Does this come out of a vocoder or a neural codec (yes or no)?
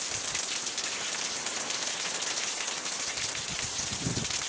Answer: no